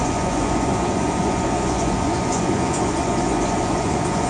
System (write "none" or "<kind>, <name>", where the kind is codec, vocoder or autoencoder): vocoder, Vocos